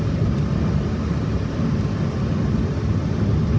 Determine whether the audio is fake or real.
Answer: real